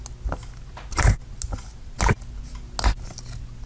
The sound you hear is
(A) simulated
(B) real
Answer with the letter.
B